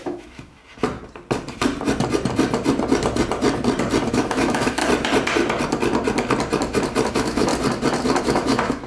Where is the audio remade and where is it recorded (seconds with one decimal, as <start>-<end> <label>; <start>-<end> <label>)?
0.0-0.6 remade; 0.6-4.1 recorded; 4.1-4.8 remade; 4.8-7.1 recorded; 7.1-7.5 remade; 7.5-8.2 recorded; 8.2-8.9 remade